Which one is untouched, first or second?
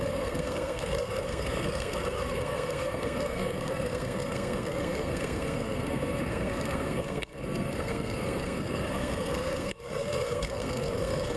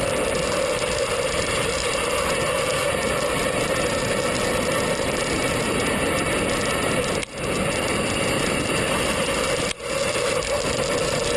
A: second